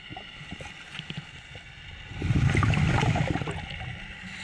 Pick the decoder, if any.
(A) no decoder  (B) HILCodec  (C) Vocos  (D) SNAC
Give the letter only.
A